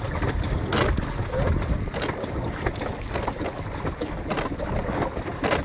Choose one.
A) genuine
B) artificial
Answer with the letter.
A